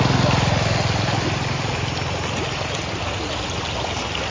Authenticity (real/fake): real